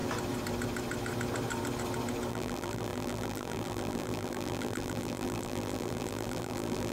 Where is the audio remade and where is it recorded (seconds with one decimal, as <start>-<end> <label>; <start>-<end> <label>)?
0.0-2.3 recorded; 2.3-6.9 remade